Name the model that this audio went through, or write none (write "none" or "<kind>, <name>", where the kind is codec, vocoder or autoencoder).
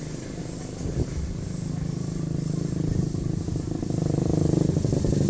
none